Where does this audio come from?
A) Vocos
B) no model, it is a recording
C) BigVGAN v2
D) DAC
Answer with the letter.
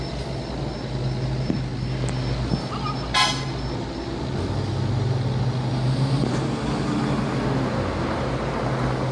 B